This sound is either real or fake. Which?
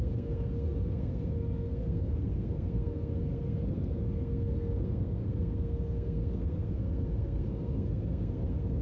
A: fake